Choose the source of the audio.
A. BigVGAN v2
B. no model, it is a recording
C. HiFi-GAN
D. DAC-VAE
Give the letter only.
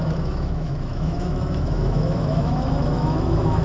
D